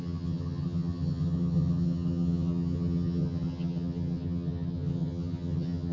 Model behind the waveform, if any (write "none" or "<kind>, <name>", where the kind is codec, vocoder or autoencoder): vocoder, HiFi-GAN